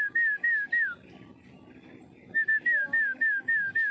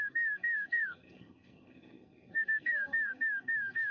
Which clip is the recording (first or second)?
first